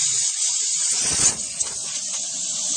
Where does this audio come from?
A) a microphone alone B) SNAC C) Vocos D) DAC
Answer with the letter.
C